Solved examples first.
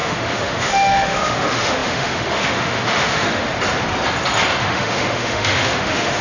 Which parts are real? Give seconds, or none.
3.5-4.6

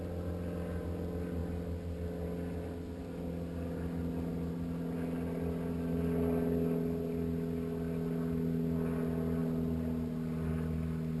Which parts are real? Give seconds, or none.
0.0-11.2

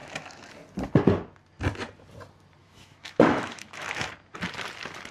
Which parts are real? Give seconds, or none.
0.5-2.6; 4.1-5.1

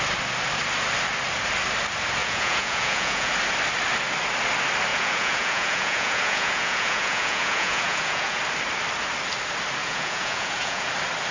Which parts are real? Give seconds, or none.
0.0-2.2; 3.3-4.9; 8.4-9.8; 10.9-11.3

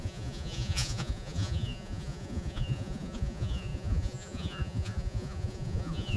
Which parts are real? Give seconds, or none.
none